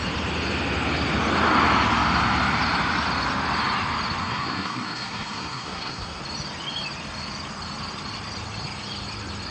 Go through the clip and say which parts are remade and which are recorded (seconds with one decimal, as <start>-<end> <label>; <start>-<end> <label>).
0.0-4.2 recorded; 4.2-6.2 remade; 6.2-9.5 recorded